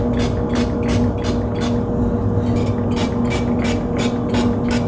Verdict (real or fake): real